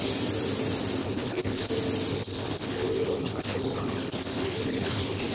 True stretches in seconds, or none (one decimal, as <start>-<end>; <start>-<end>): 0.0-1.0; 1.7-2.1